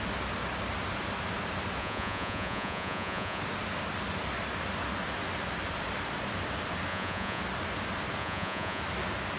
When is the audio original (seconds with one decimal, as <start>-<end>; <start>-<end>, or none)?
0.0-1.8; 3.4-6.9; 7.4-8.2; 8.8-9.4